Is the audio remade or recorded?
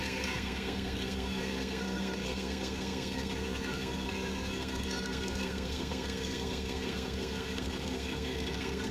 remade